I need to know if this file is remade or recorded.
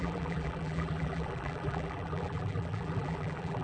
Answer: remade